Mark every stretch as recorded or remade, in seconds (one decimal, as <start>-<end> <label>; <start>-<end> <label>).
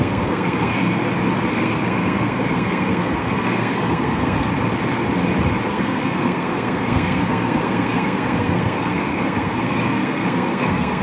0.0-1.0 remade; 1.0-1.5 recorded; 1.5-4.5 remade; 4.5-5.7 recorded; 5.7-11.0 remade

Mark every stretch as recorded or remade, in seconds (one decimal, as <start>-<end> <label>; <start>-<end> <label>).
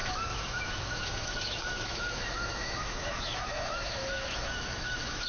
0.0-5.3 remade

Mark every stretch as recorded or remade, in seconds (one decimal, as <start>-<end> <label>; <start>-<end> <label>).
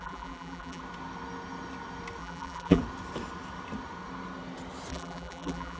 0.0-0.8 remade; 0.8-2.2 recorded; 2.2-2.8 remade; 2.8-4.9 recorded; 4.9-5.8 remade